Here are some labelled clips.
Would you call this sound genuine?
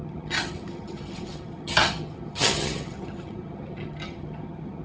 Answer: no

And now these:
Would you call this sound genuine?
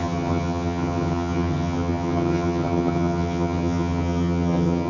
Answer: no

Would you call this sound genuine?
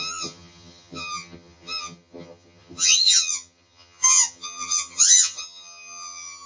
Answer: no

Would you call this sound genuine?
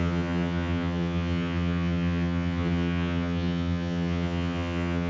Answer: no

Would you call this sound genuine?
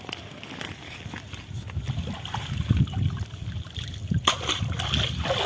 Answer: yes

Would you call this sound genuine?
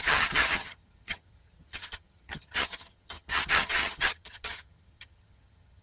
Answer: no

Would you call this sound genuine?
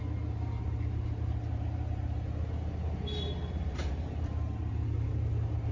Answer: yes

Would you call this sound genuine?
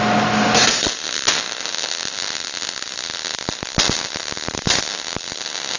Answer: yes